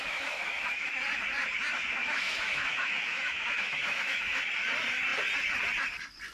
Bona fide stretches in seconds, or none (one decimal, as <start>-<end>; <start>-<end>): 1.0-2.0; 4.4-6.3